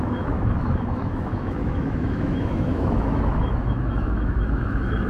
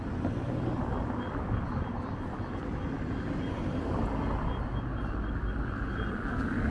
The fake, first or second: first